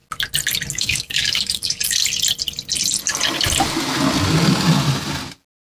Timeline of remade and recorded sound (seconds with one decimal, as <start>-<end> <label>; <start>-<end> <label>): 0.0-0.7 recorded; 0.7-2.0 remade; 2.0-5.7 recorded